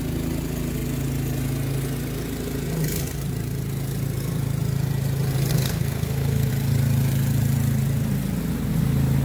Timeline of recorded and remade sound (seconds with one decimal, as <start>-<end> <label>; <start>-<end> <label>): 0.0-5.5 recorded; 5.5-6.5 remade; 6.5-9.2 recorded